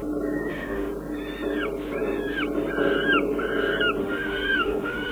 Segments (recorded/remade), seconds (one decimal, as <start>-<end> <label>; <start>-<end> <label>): 0.0-0.5 recorded; 0.5-0.9 remade; 0.9-4.0 recorded; 4.0-5.1 remade